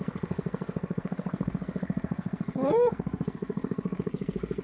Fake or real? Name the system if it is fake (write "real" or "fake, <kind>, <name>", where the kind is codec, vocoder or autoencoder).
fake, codec, SNAC